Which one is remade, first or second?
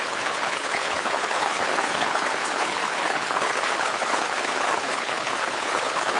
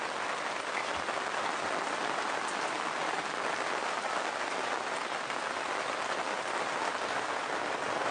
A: first